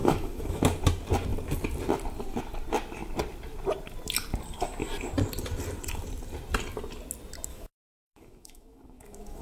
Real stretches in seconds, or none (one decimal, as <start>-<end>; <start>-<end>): 0.6-7.5